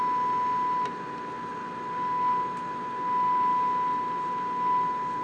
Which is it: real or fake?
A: real